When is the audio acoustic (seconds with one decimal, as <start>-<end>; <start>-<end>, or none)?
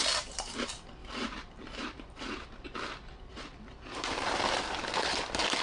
0.0-1.0; 2.3-3.3; 4.6-5.6